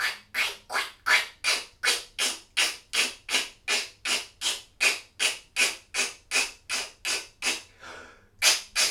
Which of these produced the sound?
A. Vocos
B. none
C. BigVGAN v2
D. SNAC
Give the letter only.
B